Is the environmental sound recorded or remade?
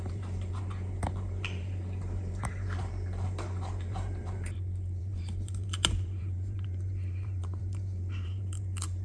remade